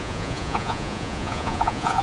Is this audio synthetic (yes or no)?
yes